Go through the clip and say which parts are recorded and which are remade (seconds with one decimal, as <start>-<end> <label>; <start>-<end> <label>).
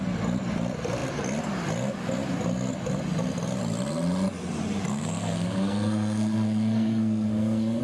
0.0-4.9 recorded; 4.9-7.8 remade